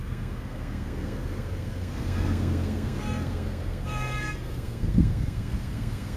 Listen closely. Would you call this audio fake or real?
fake